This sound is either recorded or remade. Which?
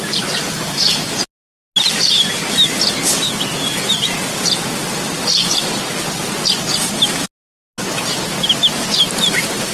recorded